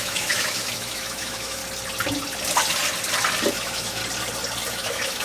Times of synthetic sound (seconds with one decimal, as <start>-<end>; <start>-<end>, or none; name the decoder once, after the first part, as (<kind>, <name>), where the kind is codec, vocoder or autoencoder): 0.0-1.6 (autoencoder, DAC-VAE); 3.5-4.0; 4.7-5.2